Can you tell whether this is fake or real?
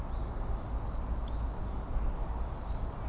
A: real